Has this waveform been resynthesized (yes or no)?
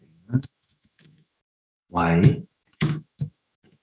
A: yes